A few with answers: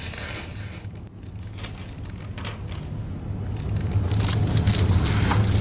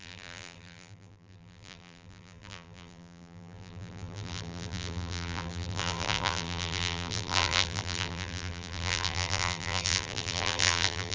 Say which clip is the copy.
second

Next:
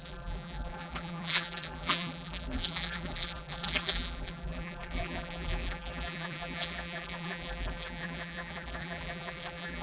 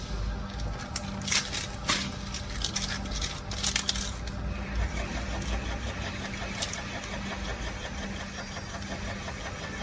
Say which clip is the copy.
first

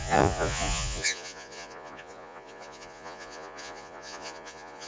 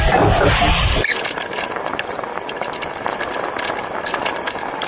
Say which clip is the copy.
first